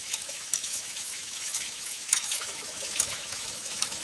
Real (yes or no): no